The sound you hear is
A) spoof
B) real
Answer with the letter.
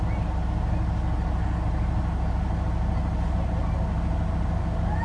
B